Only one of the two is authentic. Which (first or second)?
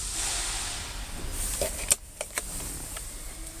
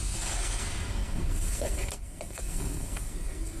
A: first